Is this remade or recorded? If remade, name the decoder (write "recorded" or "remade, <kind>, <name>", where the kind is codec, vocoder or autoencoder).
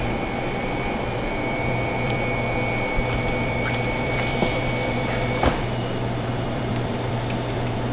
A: remade, vocoder, BigVGAN v2